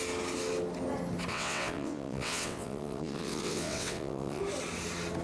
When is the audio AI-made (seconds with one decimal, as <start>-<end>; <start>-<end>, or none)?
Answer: 1.3-4.4